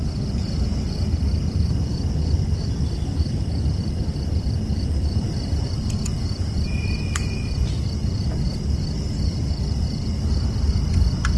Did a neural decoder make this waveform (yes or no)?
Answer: yes